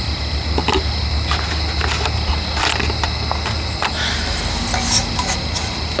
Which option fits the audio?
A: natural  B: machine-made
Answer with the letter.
A